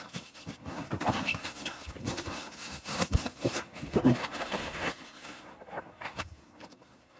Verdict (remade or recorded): remade